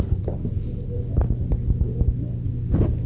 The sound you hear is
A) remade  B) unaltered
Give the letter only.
B